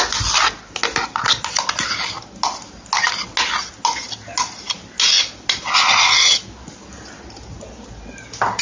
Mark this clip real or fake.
real